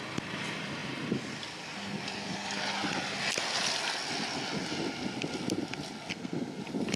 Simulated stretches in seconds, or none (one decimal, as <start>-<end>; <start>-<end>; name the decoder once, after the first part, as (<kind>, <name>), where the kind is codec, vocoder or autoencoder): 6.1-6.6 (codec, SNAC)